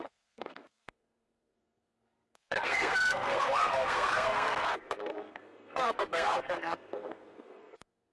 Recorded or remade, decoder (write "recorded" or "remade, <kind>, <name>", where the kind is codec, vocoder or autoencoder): remade, codec, SNAC